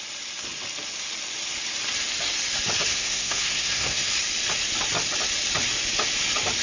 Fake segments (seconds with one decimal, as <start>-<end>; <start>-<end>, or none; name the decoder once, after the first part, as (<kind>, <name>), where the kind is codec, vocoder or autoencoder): 2.9-4.1 (codec, SNAC)